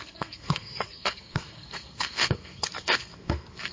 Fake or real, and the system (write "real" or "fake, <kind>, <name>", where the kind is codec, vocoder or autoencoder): fake, codec, SNAC